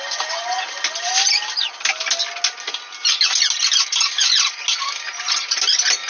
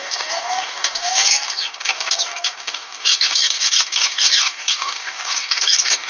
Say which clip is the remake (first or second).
second